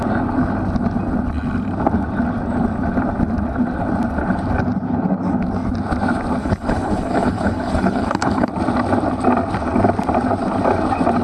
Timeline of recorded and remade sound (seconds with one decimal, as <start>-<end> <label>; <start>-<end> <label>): 0.0-6.4 recorded; 6.4-8.5 remade; 8.5-11.2 recorded